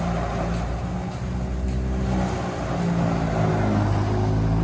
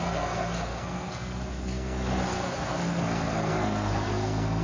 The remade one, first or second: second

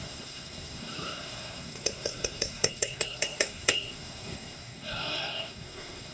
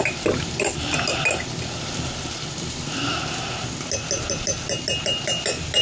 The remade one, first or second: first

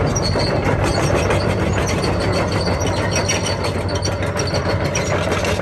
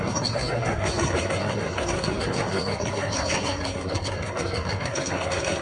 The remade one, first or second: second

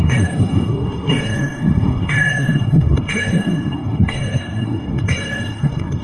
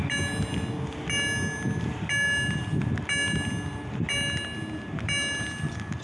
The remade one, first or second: first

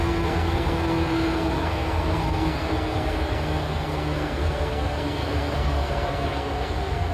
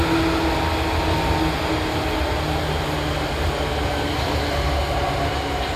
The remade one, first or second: first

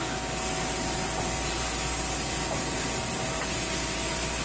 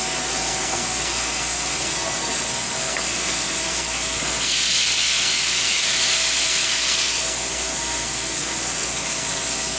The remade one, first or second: second